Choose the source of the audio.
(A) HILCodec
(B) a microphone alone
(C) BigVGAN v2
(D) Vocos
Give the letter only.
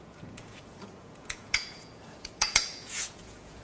D